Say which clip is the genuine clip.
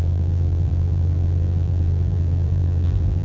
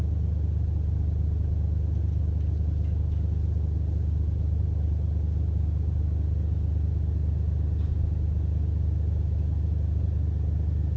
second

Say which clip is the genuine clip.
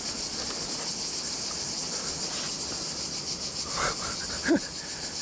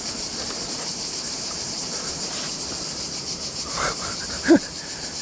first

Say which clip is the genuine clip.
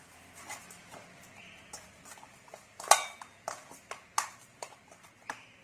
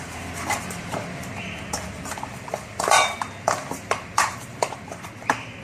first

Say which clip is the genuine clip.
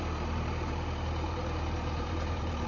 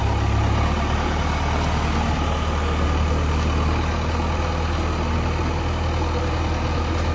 second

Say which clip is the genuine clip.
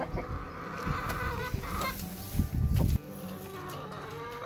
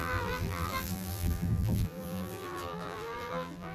first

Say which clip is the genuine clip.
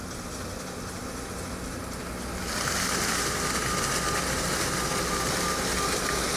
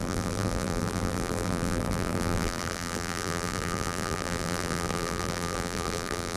first